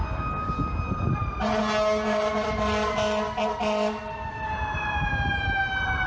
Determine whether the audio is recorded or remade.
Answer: recorded